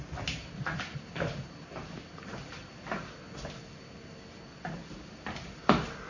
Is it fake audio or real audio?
real